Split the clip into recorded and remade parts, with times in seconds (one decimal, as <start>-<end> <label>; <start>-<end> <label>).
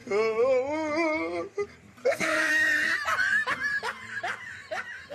0.0-2.0 recorded; 2.0-2.5 remade; 2.5-5.1 recorded